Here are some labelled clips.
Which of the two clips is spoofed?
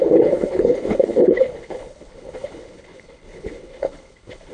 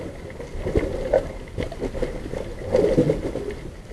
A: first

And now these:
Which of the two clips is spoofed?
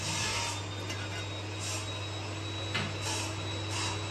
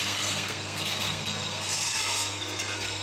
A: second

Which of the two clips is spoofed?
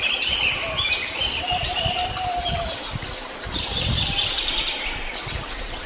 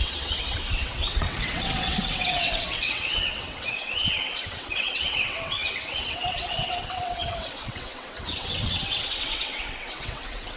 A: second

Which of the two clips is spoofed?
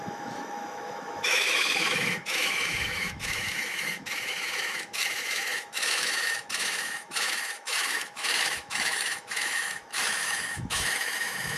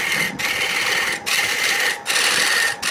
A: first